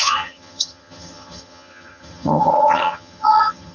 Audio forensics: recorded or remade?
remade